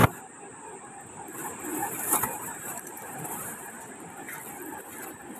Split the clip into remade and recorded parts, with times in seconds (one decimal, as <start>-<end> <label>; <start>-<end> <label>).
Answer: 0.0-1.7 recorded; 1.7-3.8 remade; 3.8-5.4 recorded